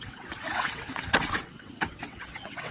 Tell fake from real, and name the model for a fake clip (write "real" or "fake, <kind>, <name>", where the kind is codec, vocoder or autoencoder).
fake, vocoder, WaveNeXt